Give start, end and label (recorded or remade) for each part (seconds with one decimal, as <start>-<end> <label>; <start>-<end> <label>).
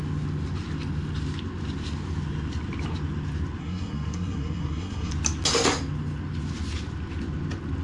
0.0-3.6 recorded; 3.6-5.1 remade; 5.1-7.8 recorded